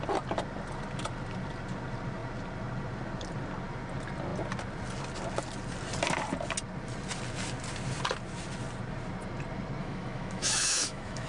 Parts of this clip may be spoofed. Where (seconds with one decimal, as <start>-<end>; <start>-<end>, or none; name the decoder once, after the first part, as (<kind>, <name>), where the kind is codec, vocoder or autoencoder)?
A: 9.8-11.3 (autoencoder, DAC-VAE)